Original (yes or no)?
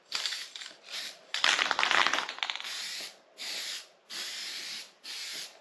no